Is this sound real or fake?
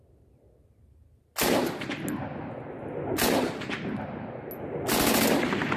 real